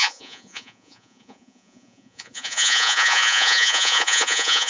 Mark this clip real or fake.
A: fake